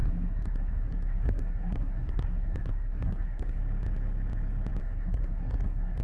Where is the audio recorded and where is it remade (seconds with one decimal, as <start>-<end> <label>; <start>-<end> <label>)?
0.0-3.6 remade; 3.6-4.8 recorded; 4.8-6.0 remade